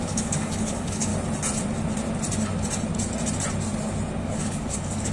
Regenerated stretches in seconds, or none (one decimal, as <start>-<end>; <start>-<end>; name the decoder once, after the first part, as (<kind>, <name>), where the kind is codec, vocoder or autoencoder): 0.0-1.1 (codec, DAC); 4.2-5.1